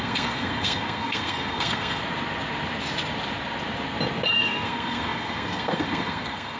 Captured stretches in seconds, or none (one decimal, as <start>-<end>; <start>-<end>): 2.0-4.3